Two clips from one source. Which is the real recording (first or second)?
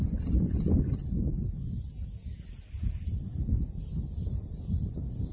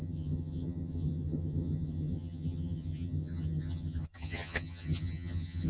first